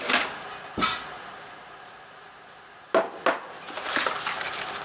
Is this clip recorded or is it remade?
recorded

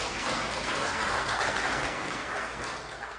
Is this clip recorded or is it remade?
remade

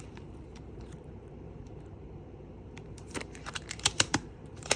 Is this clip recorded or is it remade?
remade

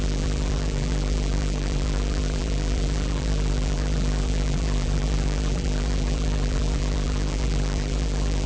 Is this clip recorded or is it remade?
remade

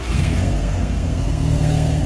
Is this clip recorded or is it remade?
remade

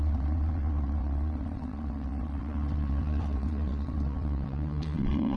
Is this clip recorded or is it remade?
remade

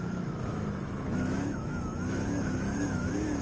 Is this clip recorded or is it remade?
remade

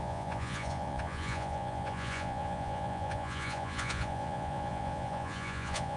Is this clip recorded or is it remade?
remade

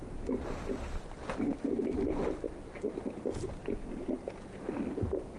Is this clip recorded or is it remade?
recorded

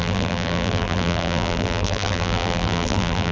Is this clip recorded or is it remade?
remade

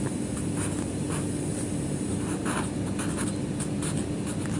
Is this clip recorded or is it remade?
recorded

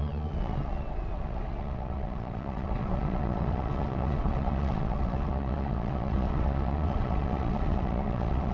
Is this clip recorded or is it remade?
remade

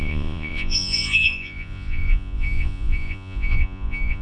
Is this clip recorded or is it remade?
remade